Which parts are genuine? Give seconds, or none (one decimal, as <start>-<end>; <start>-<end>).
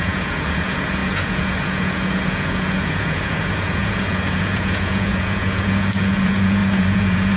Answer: none